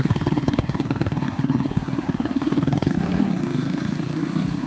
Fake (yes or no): yes